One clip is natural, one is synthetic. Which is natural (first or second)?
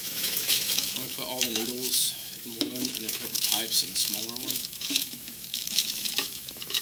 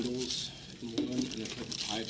second